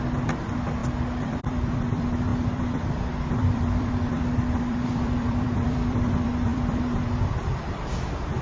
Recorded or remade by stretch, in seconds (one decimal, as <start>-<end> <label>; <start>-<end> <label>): 0.0-8.4 remade